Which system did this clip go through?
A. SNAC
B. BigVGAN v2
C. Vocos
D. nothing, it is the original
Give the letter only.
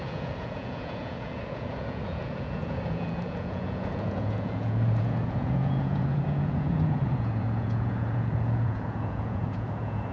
C